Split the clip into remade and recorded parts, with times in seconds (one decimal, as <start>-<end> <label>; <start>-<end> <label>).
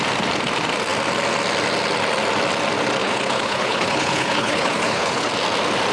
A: 0.0-3.0 recorded; 3.0-5.3 remade; 5.3-5.9 recorded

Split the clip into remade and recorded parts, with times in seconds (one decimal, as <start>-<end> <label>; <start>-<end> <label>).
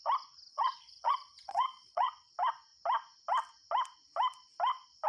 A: 0.0-0.5 recorded; 0.5-2.1 remade; 2.1-5.1 recorded